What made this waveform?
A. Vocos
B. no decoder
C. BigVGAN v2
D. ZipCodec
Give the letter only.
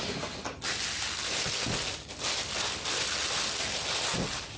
B